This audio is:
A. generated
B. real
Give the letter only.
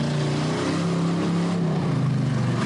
B